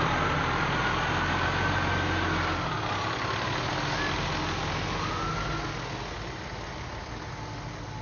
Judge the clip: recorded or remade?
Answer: recorded